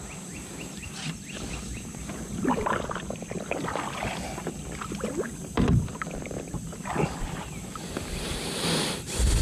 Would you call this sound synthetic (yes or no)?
yes